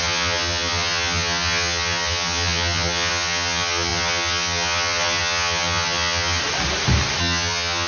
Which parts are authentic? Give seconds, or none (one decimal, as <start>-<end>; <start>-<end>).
6.4-7.2